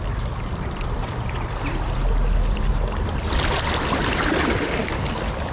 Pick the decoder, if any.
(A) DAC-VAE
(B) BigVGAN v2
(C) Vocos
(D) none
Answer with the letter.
B